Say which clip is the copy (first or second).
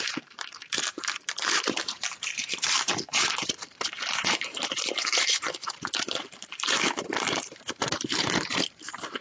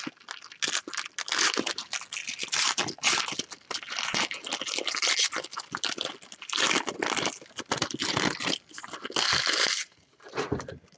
first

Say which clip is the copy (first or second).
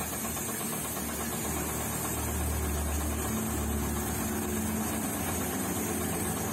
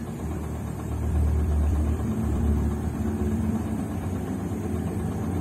second